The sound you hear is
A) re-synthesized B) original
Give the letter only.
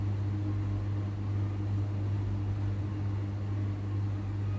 B